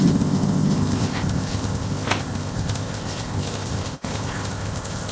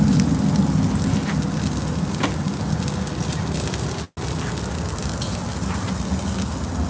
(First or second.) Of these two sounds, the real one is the second